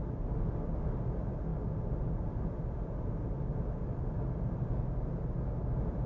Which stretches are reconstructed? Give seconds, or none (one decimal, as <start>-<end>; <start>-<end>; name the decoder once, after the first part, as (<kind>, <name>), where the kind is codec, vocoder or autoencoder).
1.5-4.8 (vocoder, BigVGAN v2)